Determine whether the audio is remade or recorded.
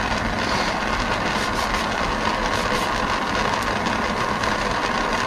recorded